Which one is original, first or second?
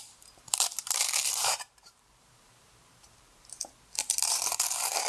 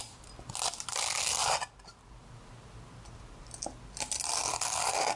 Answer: second